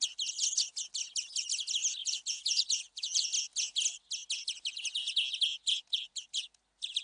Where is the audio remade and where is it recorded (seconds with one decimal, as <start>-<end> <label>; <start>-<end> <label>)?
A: 0.0-2.0 recorded; 2.0-3.3 remade; 3.3-5.5 recorded; 5.5-6.6 remade; 6.6-7.0 recorded